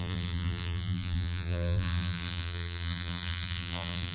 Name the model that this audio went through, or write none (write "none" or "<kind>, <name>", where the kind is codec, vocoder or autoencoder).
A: vocoder, BigVGAN v2